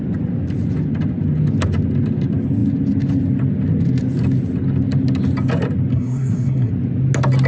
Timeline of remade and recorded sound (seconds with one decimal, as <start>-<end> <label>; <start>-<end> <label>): 0.0-5.9 recorded; 5.9-6.7 remade; 6.7-7.5 recorded